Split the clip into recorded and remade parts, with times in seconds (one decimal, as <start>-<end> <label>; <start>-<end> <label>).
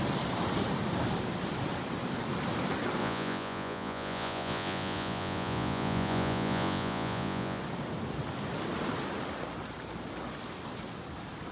0.0-3.0 recorded; 3.0-7.6 remade; 7.6-11.5 recorded